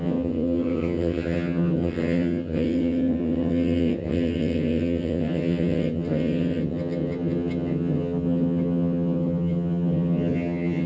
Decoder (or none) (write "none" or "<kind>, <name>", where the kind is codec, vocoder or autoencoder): vocoder, HiFi-GAN